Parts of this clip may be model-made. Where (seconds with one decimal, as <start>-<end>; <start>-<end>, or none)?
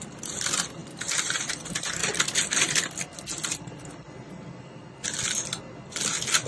0.8-1.5